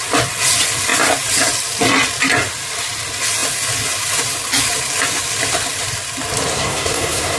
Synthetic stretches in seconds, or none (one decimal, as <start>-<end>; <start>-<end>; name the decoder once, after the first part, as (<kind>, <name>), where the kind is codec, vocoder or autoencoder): 6.5-7.4 (codec, SNAC)